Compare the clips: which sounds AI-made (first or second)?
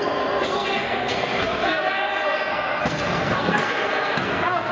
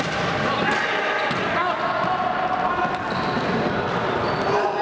first